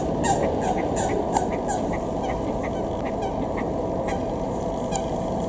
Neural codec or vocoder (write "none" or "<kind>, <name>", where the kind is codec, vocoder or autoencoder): none